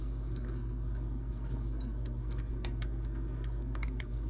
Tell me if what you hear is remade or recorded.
remade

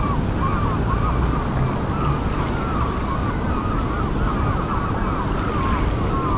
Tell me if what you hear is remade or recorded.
recorded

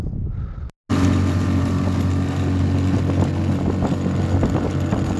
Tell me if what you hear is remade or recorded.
recorded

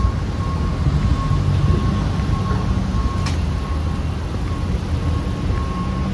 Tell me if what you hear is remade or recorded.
recorded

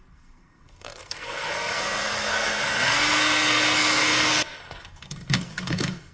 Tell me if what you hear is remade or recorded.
remade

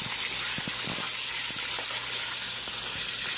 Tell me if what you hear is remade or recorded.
recorded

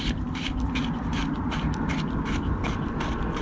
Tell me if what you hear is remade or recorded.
recorded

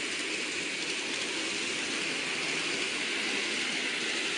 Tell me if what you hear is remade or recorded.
recorded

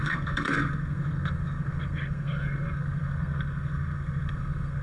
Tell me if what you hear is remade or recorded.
remade